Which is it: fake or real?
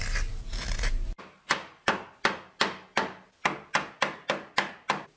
real